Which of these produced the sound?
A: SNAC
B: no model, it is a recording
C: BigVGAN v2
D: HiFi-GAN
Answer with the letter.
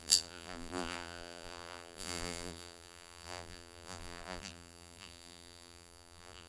C